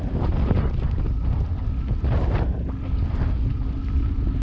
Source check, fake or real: real